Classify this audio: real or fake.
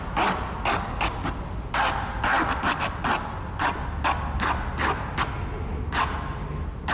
real